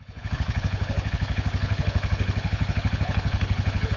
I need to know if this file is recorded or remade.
remade